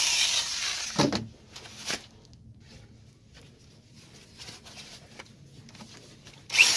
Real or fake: real